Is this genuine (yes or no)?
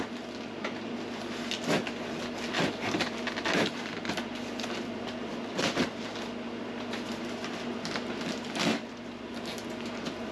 yes